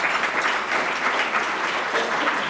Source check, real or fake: real